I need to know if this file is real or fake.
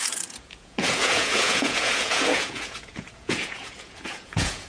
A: fake